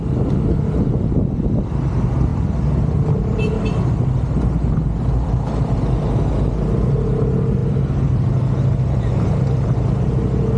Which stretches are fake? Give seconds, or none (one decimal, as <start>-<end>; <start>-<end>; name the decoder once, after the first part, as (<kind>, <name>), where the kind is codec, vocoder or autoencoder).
none

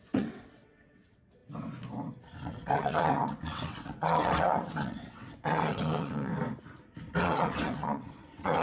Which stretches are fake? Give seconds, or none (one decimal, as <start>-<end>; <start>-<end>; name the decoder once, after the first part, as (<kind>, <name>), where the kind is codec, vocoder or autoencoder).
0.0-1.4 (vocoder, WaveNeXt); 2.4-6.3; 7.2-8.6

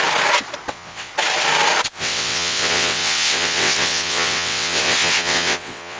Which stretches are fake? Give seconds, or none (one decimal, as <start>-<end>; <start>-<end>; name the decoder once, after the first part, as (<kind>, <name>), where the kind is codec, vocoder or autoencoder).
0.7-1.1 (vocoder, WaveNeXt); 1.9-6.0

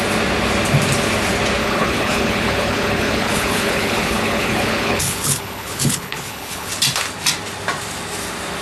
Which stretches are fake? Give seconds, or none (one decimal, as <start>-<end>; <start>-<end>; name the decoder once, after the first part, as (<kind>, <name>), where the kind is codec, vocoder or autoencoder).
1.6-6.7 (codec, HILCodec)

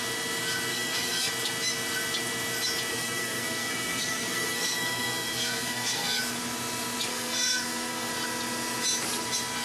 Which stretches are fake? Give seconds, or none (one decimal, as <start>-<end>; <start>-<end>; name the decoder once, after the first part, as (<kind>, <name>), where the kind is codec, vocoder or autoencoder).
0.7-1.3 (codec, SNAC); 2.9-6.2; 7.1-8.1

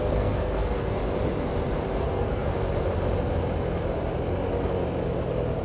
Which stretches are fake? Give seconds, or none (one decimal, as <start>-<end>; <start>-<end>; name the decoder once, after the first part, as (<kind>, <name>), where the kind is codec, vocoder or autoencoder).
0.0-1.0 (codec, SNAC); 2.0-2.5

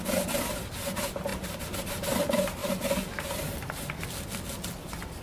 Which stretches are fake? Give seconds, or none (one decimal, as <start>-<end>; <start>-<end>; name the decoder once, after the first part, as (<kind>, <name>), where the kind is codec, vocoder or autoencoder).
none